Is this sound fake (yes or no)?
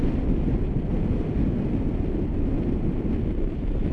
no